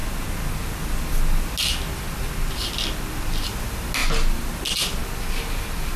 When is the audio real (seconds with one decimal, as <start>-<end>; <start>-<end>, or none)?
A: 0.0-6.0